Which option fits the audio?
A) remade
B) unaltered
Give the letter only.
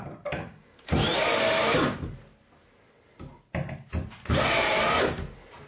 B